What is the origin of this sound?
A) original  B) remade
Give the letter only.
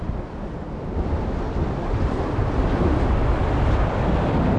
A